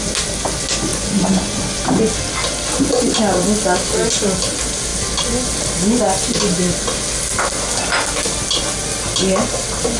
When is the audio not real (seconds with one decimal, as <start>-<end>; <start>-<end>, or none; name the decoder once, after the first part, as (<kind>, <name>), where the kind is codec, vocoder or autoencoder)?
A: 0.9-1.8 (vocoder, Vocos)